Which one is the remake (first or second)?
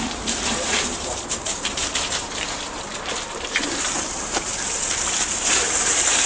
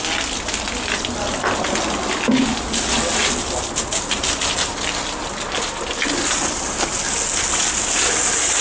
first